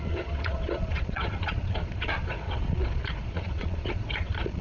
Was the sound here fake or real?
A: fake